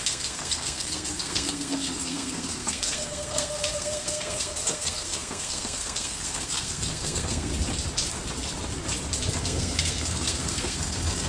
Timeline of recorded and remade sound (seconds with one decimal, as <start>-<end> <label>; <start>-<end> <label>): 0.0-7.5 remade; 7.5-9.4 recorded; 9.4-11.3 remade